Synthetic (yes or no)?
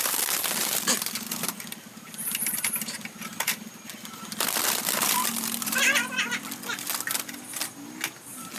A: no